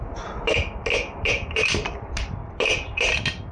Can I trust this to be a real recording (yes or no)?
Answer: yes